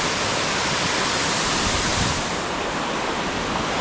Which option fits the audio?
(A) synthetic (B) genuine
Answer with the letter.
B